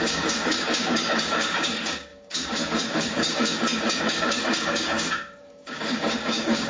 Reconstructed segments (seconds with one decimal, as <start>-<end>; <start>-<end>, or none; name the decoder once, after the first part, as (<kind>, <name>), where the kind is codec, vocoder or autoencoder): 0.0-6.7 (codec, DAC)